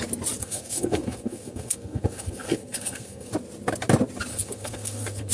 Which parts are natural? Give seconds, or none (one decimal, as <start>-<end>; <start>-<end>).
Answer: 0.0-0.4; 3.3-4.3